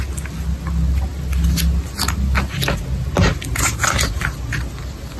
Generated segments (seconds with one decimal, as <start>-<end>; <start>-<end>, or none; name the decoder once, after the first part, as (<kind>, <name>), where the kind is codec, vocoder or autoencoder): none